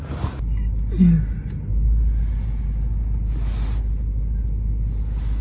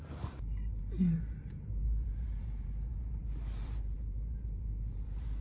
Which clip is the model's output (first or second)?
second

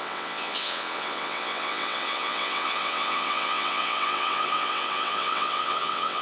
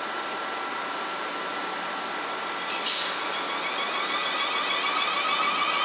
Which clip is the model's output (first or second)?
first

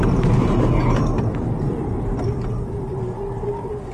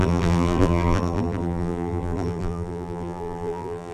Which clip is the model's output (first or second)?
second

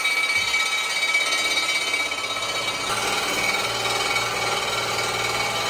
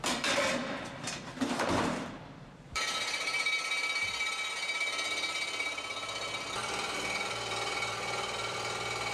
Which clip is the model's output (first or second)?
second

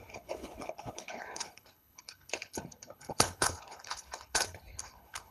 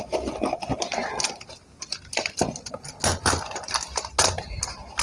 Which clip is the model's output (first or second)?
first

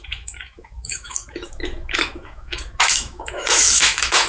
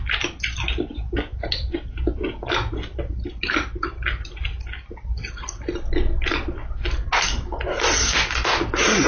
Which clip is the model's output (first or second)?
first